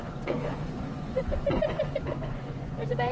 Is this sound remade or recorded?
remade